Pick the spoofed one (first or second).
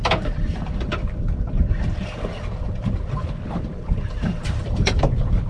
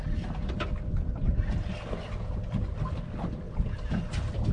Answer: first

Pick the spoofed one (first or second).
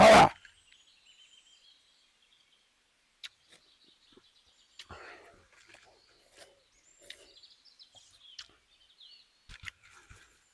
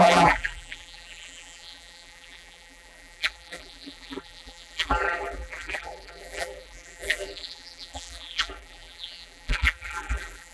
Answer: second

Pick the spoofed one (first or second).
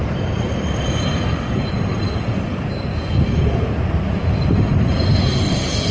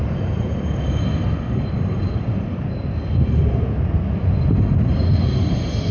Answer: first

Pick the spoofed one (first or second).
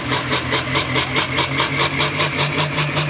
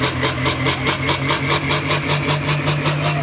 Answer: first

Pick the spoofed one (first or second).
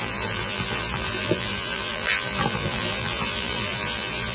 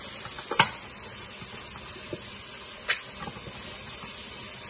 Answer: first